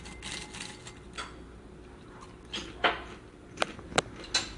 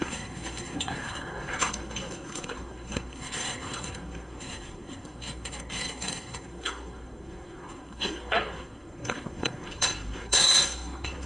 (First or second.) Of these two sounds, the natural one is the first